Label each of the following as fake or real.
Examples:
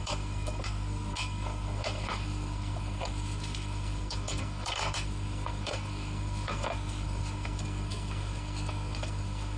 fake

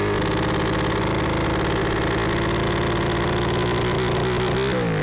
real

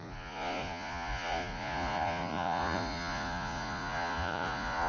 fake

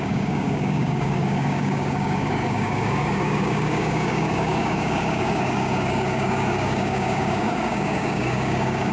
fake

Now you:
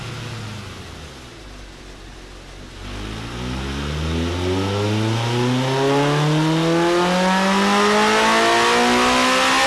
real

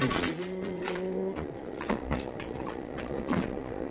fake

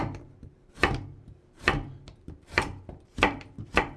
fake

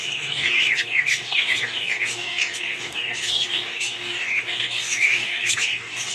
fake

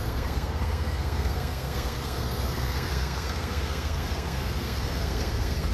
fake